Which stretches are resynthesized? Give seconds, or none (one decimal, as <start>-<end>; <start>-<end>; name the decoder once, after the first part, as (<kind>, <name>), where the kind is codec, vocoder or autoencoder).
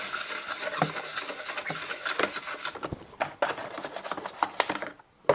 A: none